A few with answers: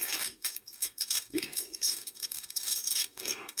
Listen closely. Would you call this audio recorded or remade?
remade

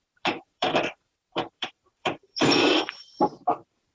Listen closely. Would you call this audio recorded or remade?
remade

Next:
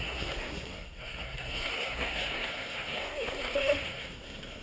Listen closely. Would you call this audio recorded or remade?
remade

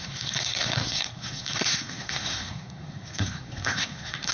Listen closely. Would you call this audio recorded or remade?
remade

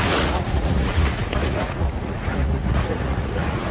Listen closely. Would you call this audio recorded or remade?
remade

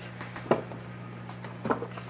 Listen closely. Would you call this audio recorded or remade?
recorded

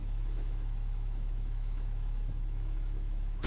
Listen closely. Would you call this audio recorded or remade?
remade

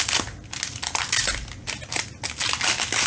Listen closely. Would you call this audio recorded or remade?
recorded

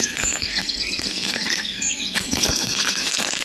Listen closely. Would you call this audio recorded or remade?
remade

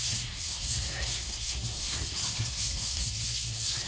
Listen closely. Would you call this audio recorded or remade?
remade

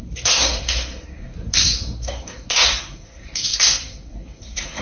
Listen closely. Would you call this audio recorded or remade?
remade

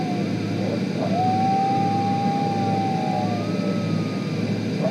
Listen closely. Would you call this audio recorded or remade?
recorded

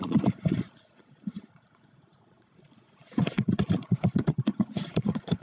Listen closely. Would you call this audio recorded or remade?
remade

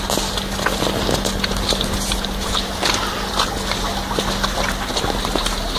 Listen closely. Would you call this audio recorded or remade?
recorded